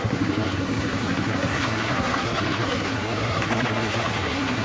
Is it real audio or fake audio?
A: fake